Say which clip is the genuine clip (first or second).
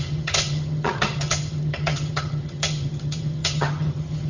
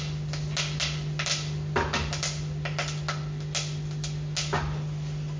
second